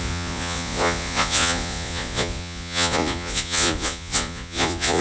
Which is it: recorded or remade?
remade